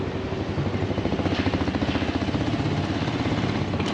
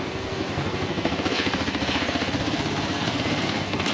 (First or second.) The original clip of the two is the first